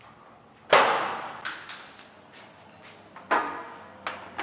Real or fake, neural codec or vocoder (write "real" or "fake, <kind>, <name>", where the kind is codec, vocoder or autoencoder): real